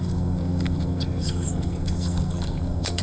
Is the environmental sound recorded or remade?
remade